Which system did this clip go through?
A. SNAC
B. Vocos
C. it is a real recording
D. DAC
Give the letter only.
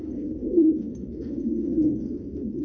A